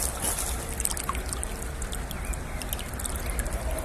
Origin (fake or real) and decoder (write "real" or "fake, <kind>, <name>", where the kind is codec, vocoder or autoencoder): real